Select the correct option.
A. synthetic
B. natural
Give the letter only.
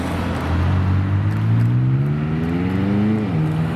B